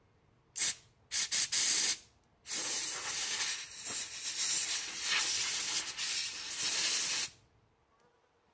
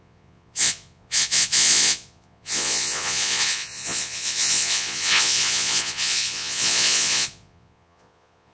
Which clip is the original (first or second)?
first